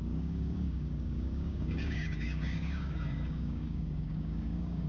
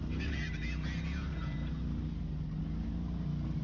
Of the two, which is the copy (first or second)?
first